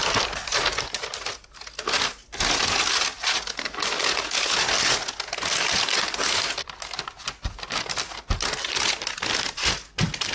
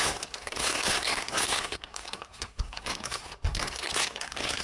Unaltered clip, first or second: first